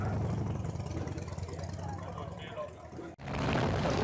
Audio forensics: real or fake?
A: real